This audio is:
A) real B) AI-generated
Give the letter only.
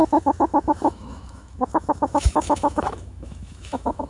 B